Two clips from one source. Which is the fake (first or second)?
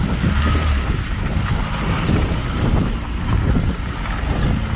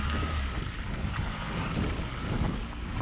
second